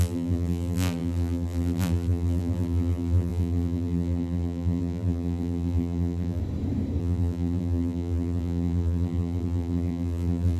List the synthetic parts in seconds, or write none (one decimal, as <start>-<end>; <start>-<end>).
0.0-6.4; 7.0-10.6